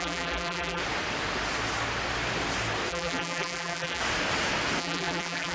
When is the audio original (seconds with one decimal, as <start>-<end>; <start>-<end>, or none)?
0.8-2.9; 4.0-4.8